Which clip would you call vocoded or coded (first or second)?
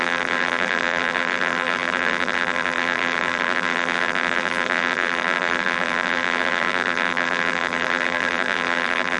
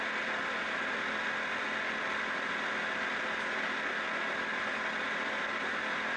first